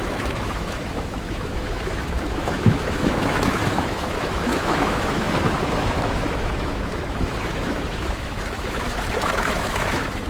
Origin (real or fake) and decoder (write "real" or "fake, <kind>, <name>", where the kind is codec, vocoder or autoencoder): fake, autoencoder, DAC-VAE